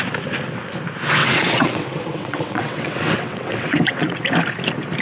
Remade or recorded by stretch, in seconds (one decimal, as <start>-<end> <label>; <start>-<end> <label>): 0.0-1.2 recorded; 1.2-4.2 remade; 4.2-5.0 recorded